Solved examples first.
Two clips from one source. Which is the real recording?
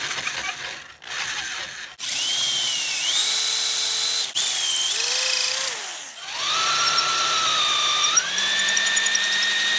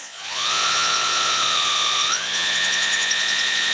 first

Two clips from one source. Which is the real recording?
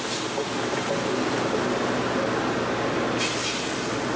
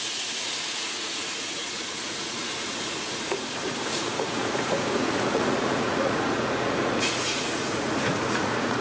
first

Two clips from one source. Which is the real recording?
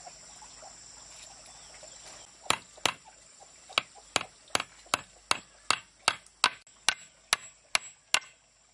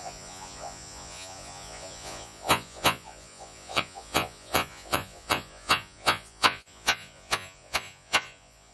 first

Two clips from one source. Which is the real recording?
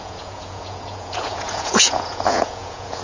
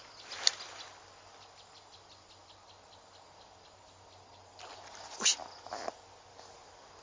second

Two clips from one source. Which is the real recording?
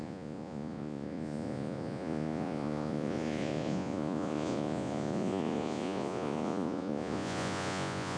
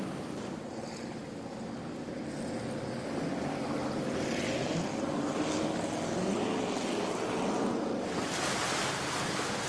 second